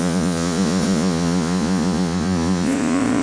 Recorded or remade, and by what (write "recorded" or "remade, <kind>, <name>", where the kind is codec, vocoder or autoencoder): remade, vocoder, Vocos